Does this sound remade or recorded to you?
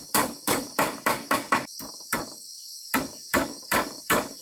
remade